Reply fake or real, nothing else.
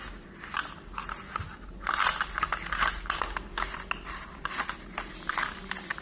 real